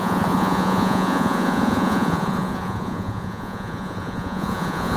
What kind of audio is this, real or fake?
fake